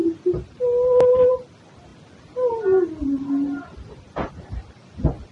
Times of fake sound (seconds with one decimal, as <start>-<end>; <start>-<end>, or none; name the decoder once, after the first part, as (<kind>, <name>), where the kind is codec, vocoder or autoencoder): none